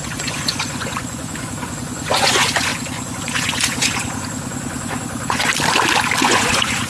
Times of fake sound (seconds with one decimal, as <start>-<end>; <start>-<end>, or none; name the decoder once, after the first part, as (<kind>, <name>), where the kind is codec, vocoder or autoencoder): 0.0-5.5 (vocoder, Vocos); 6.2-6.9